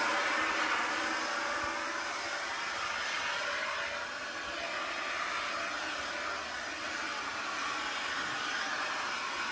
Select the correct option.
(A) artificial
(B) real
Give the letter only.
B